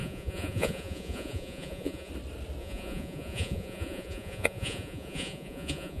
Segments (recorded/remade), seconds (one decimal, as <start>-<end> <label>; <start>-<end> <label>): 0.0-2.1 remade; 2.1-2.6 recorded; 2.6-6.0 remade